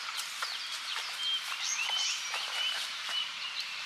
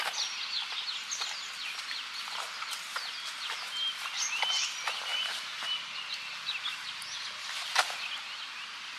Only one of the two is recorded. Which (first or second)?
second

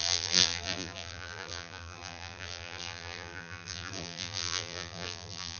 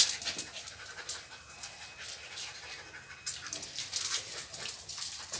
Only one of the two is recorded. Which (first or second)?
second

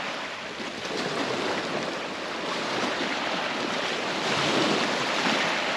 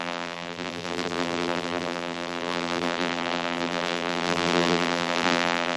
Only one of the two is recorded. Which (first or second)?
first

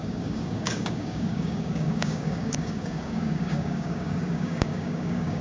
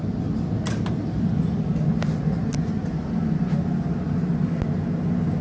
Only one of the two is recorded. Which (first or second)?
second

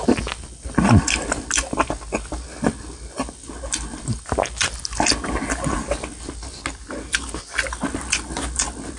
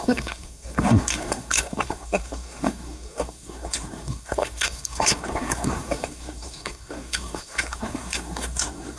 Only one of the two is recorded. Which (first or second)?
first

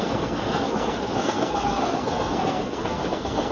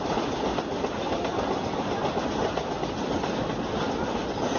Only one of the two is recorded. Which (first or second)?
second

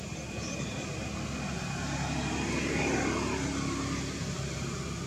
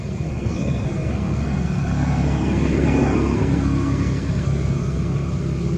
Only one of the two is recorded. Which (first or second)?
first